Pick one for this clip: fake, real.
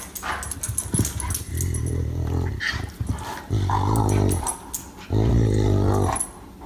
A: real